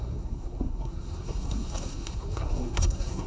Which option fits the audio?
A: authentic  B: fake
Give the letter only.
B